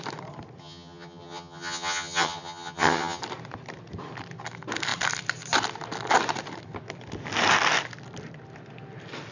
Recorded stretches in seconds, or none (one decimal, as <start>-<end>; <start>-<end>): 0.0-0.6; 3.2-9.3